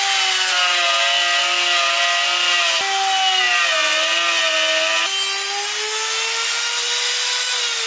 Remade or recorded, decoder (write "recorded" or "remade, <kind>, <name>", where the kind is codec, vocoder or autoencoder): recorded